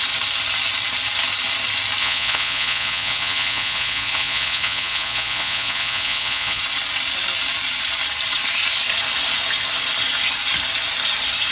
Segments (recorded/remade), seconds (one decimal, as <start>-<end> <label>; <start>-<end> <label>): 0.0-2.0 recorded; 2.0-6.6 remade; 6.6-11.5 recorded